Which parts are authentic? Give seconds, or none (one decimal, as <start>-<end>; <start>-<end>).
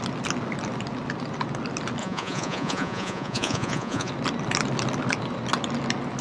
0.0-2.0; 4.1-6.2